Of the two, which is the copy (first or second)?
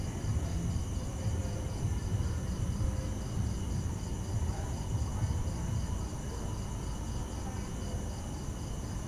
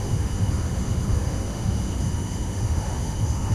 second